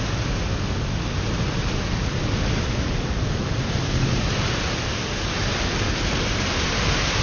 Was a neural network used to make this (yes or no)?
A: no